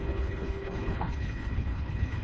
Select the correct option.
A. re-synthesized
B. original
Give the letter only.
A